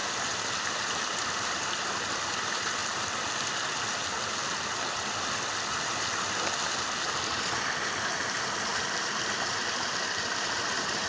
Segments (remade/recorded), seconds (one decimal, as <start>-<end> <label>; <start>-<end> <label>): 0.0-0.5 recorded; 0.5-2.8 remade; 2.8-7.2 recorded; 7.2-8.7 remade; 8.7-9.9 recorded; 9.9-11.1 remade

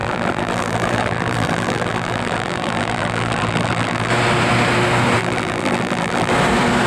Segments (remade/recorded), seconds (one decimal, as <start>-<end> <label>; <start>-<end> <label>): 0.0-4.1 remade; 4.1-5.2 recorded; 5.2-6.3 remade; 6.3-6.9 recorded

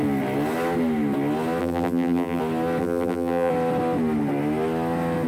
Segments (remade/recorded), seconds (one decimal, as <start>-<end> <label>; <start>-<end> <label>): 0.0-1.6 recorded; 1.6-2.4 remade; 2.4-2.8 recorded; 2.8-3.5 remade; 3.5-5.3 recorded

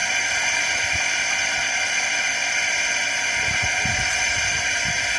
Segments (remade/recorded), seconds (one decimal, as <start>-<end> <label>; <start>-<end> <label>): 0.0-5.2 recorded

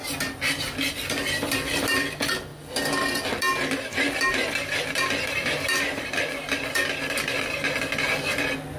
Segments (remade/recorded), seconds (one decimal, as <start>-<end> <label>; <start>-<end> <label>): 0.0-8.8 recorded